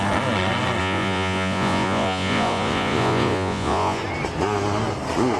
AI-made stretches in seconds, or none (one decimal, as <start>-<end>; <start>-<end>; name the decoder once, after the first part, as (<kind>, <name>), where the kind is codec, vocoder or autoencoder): 0.8-4.0 (vocoder, Vocos)